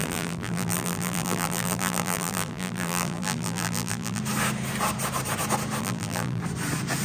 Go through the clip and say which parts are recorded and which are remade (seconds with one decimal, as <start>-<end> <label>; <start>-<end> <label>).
0.0-4.2 remade; 4.2-5.8 recorded; 5.8-6.4 remade; 6.4-7.0 recorded